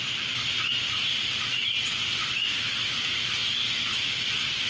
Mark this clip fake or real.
real